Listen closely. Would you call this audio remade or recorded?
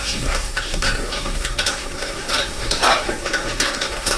remade